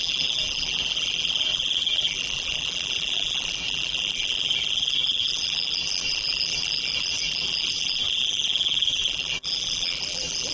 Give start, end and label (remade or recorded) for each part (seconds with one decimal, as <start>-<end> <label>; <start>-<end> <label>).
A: 0.0-10.5 remade